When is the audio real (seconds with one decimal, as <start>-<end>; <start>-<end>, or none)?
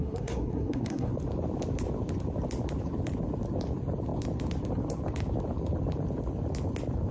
1.1-7.1